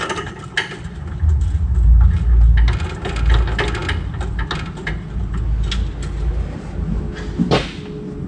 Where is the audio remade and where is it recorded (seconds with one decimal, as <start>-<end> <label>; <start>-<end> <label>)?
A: 0.0-8.3 recorded